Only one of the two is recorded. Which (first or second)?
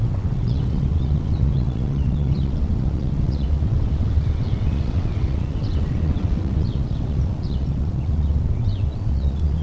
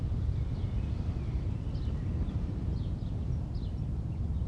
second